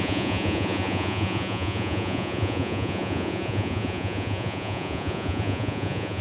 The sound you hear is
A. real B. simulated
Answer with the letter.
B